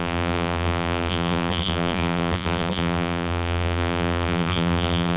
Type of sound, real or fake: fake